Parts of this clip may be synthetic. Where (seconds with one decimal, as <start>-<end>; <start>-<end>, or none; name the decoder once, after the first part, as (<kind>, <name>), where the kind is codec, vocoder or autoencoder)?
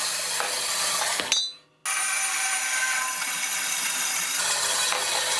none